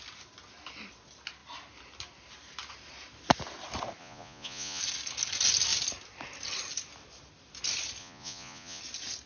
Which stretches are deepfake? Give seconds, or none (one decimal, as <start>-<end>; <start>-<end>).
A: 4.0-4.8; 8.0-8.8